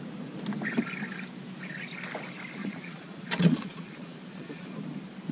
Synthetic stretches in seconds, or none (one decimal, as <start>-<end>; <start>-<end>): 2.6-4.7